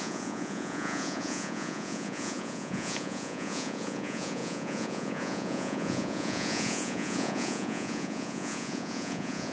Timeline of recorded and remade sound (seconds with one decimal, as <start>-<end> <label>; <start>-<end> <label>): 0.0-9.5 remade